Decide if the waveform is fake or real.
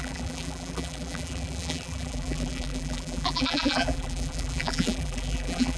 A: fake